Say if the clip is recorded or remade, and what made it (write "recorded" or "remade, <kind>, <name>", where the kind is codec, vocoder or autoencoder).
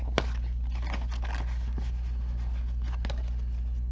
recorded